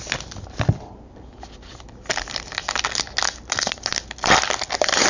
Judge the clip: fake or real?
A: real